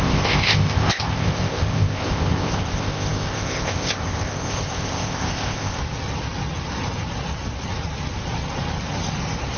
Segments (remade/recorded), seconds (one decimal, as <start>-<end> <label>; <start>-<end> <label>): 0.0-5.8 remade; 5.8-9.6 recorded